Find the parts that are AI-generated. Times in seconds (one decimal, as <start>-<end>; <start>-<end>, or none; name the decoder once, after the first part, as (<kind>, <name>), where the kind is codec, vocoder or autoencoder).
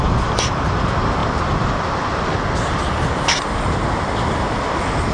none